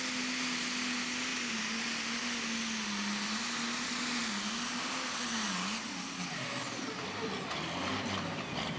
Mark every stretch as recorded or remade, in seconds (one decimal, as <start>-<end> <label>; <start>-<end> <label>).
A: 0.0-8.8 recorded

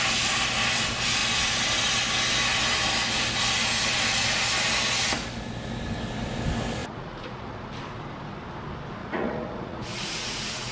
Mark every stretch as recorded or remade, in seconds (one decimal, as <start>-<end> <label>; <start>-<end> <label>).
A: 0.0-6.8 recorded; 6.8-7.7 remade; 7.7-9.0 recorded; 9.0-10.7 remade